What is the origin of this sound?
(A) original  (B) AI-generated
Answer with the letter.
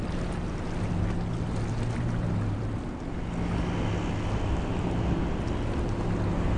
A